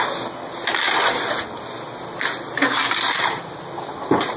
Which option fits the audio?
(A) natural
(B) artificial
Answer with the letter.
A